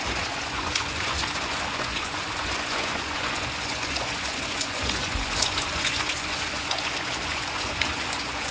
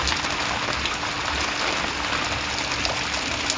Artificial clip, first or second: first